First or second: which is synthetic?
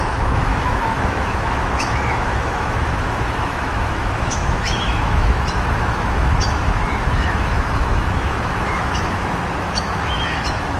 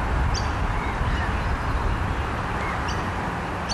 first